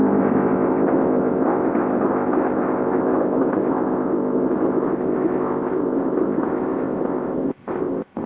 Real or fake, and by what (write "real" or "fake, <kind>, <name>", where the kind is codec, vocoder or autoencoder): fake, codec, ZipCodec